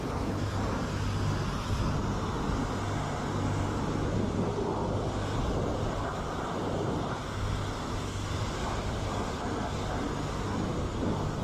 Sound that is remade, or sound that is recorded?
recorded